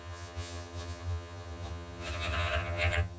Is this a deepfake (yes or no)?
yes